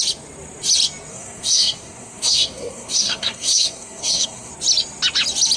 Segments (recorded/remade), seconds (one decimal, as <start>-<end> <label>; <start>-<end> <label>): 0.0-1.1 recorded; 1.1-4.5 remade; 4.5-5.6 recorded